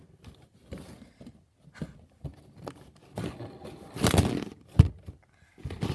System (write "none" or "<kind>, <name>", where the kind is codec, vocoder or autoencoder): none